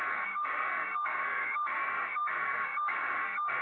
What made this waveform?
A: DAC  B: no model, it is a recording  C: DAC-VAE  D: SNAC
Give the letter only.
D